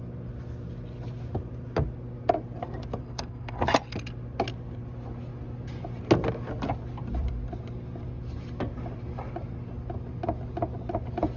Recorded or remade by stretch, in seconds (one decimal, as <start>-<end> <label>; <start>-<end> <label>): 0.0-3.0 recorded; 3.0-3.6 remade; 3.6-11.4 recorded